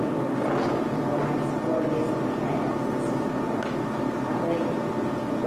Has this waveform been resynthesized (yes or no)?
no